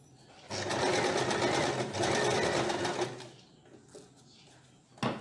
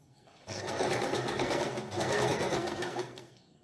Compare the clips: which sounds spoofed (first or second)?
second